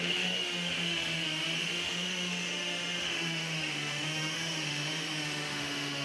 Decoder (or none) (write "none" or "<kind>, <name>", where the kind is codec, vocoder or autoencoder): autoencoder, DAC-VAE